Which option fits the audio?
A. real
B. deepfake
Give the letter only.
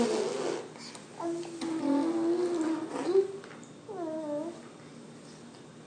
A